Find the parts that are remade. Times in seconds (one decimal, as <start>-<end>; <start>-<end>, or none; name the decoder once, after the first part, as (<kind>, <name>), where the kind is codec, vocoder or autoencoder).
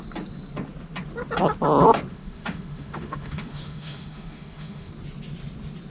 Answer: 2.1-4.9 (autoencoder, DAC-VAE)